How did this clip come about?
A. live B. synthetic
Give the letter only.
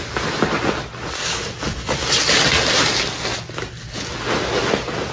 A